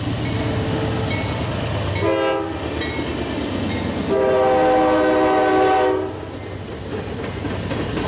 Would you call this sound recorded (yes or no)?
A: yes